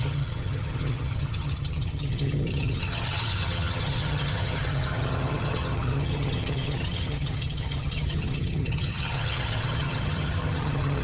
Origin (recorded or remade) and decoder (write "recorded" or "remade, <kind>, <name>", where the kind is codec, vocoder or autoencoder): remade, vocoder, HiFi-GAN